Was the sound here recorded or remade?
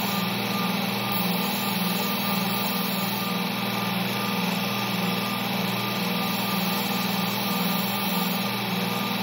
recorded